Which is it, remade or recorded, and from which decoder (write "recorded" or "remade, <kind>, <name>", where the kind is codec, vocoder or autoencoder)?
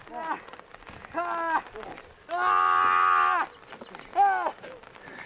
recorded